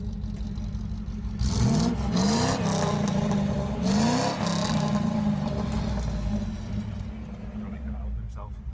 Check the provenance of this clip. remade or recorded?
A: recorded